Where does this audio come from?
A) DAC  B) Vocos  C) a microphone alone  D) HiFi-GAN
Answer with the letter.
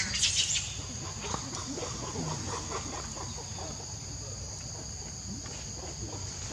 C